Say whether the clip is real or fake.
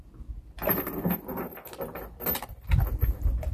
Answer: real